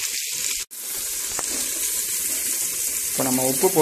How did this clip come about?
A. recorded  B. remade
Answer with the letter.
A